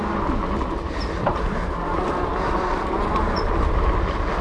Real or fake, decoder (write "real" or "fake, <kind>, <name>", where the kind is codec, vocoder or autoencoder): real